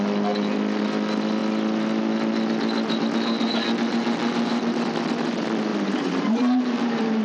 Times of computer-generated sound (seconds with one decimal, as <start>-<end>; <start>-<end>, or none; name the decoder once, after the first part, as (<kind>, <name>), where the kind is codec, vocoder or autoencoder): 3.9-4.8 (vocoder, BigVGAN v2); 5.7-7.2